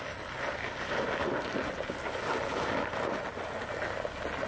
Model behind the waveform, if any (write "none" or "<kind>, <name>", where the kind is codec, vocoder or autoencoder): none